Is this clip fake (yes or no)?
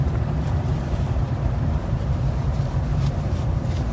yes